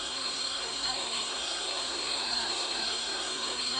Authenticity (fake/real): fake